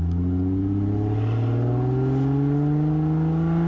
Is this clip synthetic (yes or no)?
no